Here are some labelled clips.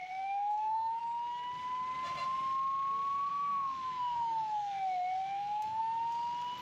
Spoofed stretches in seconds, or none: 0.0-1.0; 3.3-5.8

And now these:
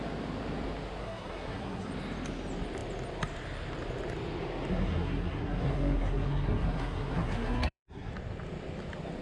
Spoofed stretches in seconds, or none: 1.0-1.9; 4.7-8.1

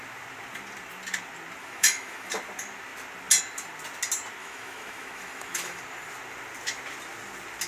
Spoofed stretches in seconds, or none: 1.6-2.3; 4.4-5.8

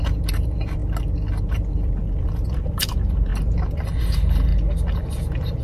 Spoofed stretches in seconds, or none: 0.0-0.8; 1.4-4.5; 5.0-5.6

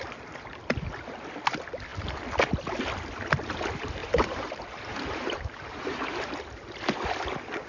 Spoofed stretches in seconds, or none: 4.0-6.3

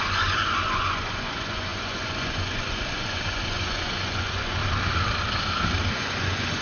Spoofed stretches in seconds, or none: 0.0-4.6; 5.9-6.6

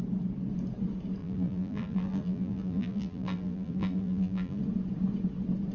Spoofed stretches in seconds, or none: 1.2-4.6

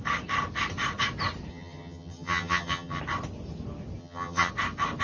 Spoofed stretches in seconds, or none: 1.5-3.0; 4.0-4.5